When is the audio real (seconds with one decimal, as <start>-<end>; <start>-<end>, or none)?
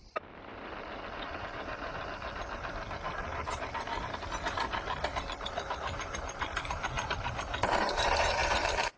none